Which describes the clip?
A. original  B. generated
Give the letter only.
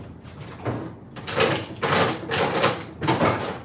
A